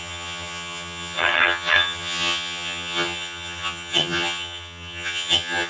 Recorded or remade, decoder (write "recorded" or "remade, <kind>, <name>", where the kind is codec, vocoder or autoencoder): remade, vocoder, HiFi-GAN